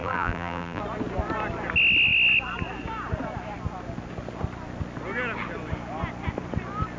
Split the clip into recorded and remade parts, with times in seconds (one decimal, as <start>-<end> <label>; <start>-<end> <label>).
0.0-0.8 remade; 0.8-7.0 recorded